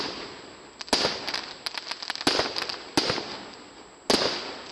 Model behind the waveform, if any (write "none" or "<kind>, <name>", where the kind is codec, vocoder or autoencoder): none